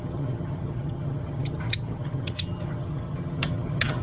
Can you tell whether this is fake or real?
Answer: fake